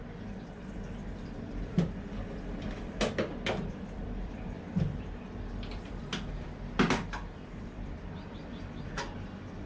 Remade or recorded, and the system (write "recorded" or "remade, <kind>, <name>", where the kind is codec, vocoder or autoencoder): remade, vocoder, BigVGAN v2